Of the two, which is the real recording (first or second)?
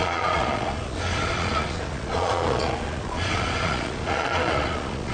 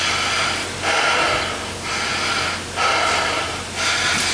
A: second